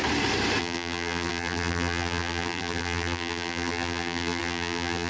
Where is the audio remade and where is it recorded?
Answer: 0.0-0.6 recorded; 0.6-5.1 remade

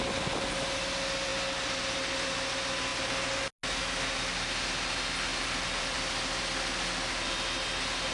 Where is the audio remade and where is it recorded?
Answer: 0.0-5.3 recorded; 5.3-6.1 remade; 6.1-8.1 recorded

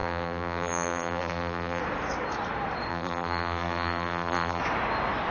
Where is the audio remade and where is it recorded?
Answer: 0.0-1.8 remade; 1.8-2.9 recorded; 2.9-4.6 remade; 4.6-5.3 recorded

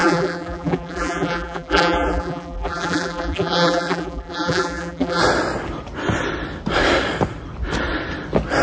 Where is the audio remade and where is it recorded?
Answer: 0.0-5.2 remade; 5.2-8.6 recorded

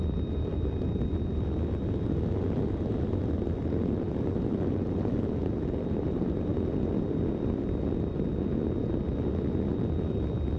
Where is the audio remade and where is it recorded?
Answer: 0.0-0.5 remade; 0.5-3.6 recorded; 3.6-6.5 remade; 6.5-10.6 recorded

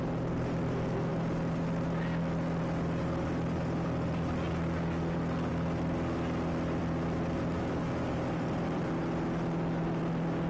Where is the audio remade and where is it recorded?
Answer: 0.0-10.5 recorded

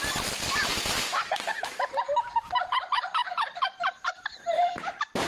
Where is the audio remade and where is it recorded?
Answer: 0.0-0.7 recorded; 0.7-2.1 remade; 2.1-3.2 recorded; 3.2-5.3 remade